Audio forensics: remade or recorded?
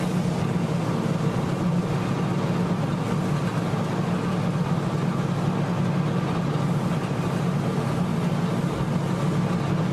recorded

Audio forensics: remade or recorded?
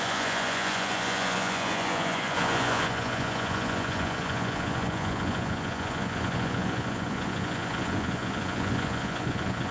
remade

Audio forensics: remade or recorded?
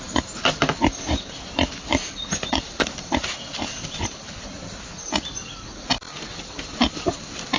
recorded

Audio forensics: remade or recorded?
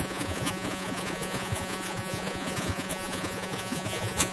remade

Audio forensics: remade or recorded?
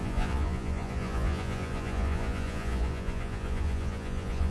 remade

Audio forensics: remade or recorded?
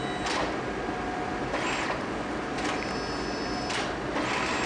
recorded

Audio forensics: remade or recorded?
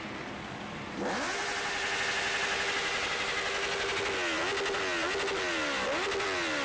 recorded